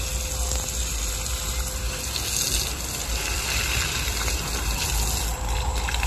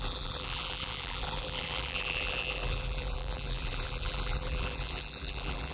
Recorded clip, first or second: first